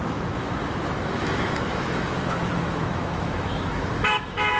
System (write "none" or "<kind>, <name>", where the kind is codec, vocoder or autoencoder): autoencoder, DAC-VAE